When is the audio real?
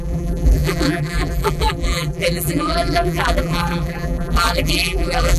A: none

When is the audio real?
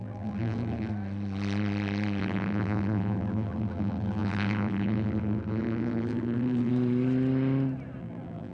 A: 0.9-2.2; 6.7-8.0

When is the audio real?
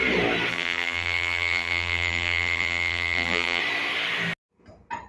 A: 0.0-0.5; 3.6-5.1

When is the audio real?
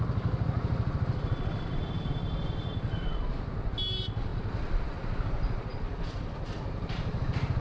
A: 0.0-2.2; 2.8-4.3; 5.2-5.7; 6.8-7.6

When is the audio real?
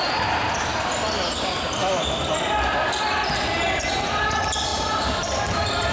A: none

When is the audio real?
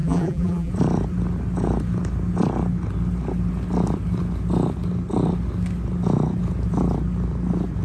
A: 0.7-7.8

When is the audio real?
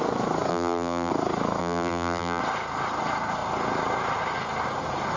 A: 0.0-0.5; 1.1-1.6; 2.4-5.2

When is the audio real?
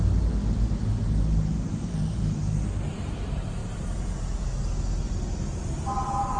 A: 0.0-1.5; 2.4-6.4